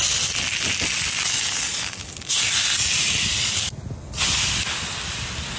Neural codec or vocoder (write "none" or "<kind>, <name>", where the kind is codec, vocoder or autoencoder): none